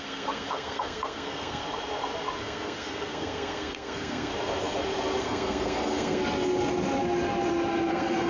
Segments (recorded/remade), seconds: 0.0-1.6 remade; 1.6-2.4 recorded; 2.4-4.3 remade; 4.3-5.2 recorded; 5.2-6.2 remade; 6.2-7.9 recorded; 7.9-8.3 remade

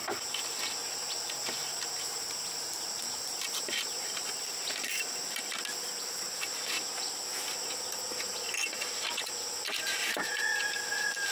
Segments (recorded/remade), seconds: 0.0-0.8 recorded; 0.8-4.9 remade; 4.9-11.3 recorded